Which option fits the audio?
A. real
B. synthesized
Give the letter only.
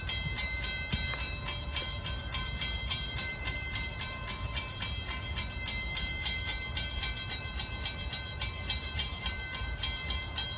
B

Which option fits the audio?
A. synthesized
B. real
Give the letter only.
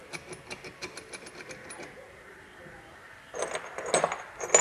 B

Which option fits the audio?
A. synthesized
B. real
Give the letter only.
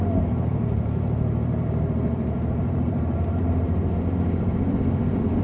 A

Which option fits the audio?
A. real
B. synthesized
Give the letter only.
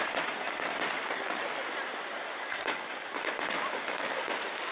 A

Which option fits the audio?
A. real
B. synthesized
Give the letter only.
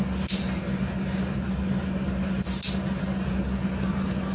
A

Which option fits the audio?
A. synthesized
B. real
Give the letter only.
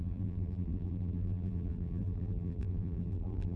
A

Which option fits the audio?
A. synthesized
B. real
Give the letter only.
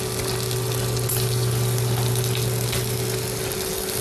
B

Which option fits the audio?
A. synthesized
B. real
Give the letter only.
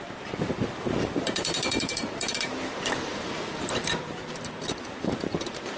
A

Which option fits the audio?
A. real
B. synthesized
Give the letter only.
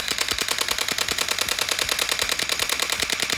A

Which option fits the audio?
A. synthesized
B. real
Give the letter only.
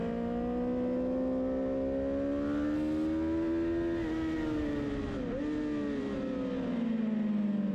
B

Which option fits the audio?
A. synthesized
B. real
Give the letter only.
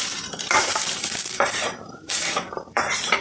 A